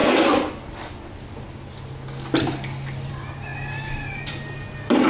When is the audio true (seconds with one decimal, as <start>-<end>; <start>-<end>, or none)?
0.0-5.1